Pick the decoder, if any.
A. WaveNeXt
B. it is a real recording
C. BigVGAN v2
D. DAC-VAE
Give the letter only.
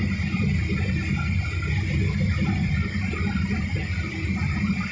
B